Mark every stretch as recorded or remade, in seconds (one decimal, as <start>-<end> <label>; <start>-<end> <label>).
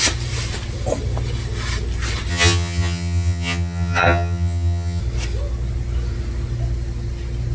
0.0-2.3 recorded; 2.3-5.0 remade; 5.0-7.5 recorded